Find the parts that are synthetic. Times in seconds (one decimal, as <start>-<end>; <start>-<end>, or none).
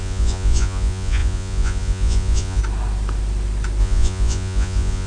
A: 0.0-2.6; 3.8-5.1